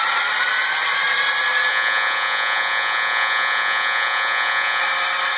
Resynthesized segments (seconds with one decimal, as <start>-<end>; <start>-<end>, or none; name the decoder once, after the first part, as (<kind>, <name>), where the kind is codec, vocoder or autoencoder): 1.7-4.8 (vocoder, Vocos)